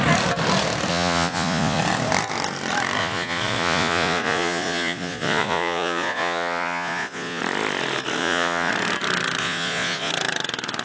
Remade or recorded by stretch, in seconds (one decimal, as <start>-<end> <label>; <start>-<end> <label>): 0.0-0.9 recorded; 0.9-1.8 remade; 1.8-3.0 recorded; 3.0-7.4 remade; 7.4-8.2 recorded; 8.2-8.7 remade; 8.7-9.4 recorded; 9.4-10.1 remade; 10.1-10.8 recorded